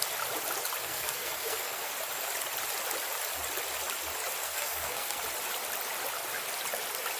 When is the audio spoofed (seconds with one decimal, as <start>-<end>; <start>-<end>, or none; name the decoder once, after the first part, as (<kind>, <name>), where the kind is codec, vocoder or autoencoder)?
0.8-1.9 (codec, SNAC); 4.4-5.2